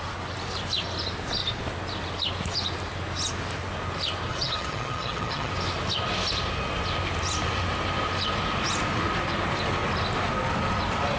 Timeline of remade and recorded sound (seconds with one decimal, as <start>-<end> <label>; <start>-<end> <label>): 0.0-4.3 recorded; 4.3-5.5 remade; 5.5-11.2 recorded